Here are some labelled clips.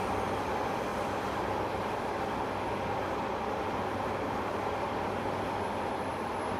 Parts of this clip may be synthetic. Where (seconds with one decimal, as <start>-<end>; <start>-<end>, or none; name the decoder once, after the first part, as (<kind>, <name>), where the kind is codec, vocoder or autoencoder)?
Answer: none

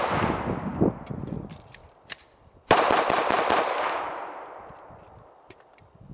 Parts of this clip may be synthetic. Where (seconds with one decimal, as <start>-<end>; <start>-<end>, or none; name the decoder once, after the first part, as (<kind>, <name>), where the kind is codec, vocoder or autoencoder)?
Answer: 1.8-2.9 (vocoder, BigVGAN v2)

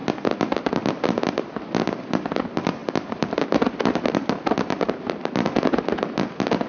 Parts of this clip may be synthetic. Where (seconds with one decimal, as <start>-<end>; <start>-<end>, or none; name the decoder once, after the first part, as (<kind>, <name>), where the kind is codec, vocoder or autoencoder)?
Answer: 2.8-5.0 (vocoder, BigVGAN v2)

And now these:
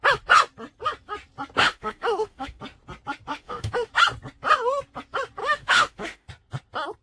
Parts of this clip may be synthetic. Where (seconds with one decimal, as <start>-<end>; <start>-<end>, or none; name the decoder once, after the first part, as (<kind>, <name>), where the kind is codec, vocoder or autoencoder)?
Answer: 1.6-2.6 (autoencoder, DAC-VAE); 3.3-3.9; 5.4-6.3